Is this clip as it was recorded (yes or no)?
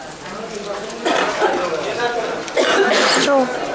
yes